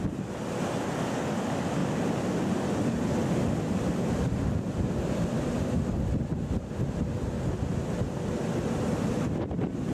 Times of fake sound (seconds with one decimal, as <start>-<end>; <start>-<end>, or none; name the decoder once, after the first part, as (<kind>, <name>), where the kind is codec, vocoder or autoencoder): none